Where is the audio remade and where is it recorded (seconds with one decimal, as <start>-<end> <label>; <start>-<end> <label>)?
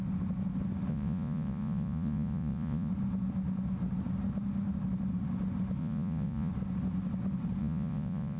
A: 0.0-0.9 recorded; 0.9-2.9 remade; 2.9-5.8 recorded; 5.8-6.5 remade; 6.5-7.6 recorded; 7.6-8.4 remade